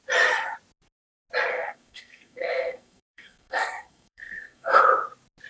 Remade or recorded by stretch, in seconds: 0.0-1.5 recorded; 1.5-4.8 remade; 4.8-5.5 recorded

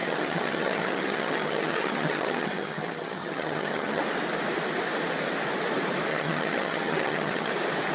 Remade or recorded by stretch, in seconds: 0.0-4.0 remade; 4.0-6.1 recorded; 6.1-7.5 remade; 7.5-7.9 recorded

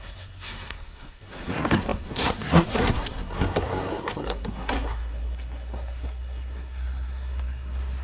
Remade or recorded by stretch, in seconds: 0.0-8.0 remade

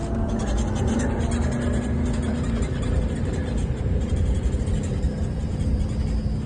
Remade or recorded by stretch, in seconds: 0.0-2.3 recorded; 2.3-6.0 remade; 6.0-6.5 recorded

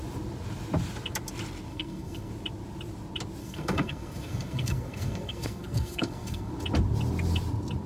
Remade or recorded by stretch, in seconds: 0.0-1.7 recorded; 1.7-2.3 remade; 2.3-3.4 recorded; 3.4-6.5 remade; 6.5-7.9 recorded